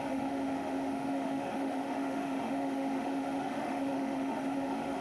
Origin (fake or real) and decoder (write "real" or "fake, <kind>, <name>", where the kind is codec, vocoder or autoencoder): fake, autoencoder, DAC-VAE